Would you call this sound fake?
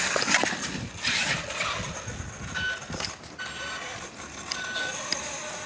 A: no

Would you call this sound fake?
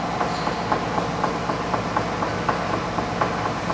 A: no